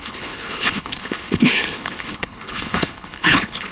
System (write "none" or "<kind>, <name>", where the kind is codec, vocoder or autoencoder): codec, HILCodec